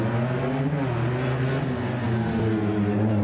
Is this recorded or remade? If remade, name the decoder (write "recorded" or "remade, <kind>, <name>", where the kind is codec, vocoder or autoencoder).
recorded